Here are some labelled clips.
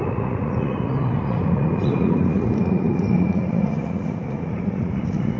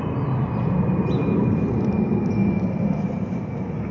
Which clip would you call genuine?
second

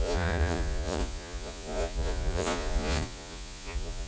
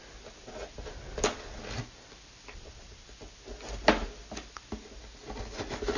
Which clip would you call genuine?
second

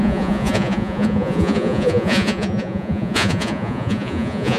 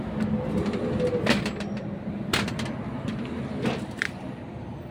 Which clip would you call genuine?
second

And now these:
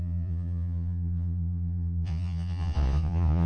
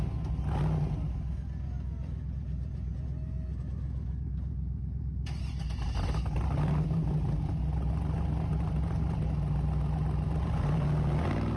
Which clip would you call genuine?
second